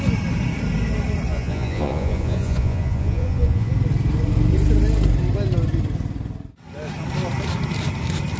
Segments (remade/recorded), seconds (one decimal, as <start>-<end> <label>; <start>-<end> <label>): 0.0-1.3 recorded; 1.3-3.7 remade; 3.7-8.4 recorded